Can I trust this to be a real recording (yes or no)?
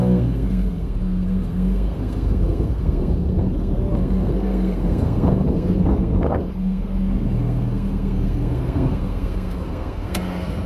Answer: no